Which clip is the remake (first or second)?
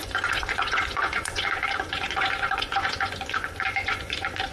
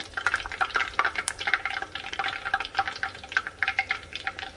first